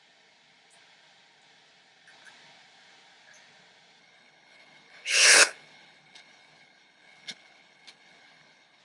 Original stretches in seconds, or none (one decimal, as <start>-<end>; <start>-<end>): 0.0-4.0